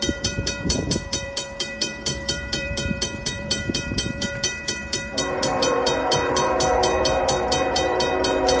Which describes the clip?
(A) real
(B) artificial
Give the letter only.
B